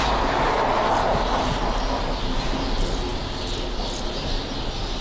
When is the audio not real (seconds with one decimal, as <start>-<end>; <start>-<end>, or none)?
none